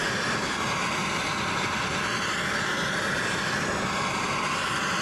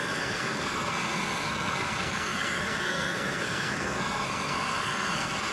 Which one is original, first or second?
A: first